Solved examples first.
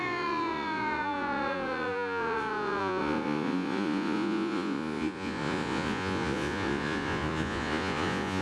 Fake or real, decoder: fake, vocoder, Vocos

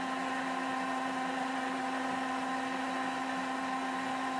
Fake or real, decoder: real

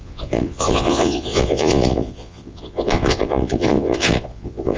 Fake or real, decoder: fake, vocoder, Vocos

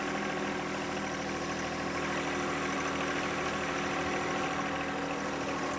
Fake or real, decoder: real